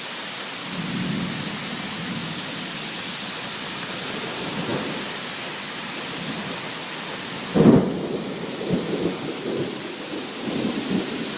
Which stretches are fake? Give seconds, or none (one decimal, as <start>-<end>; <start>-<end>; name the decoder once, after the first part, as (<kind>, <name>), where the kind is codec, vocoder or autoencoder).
none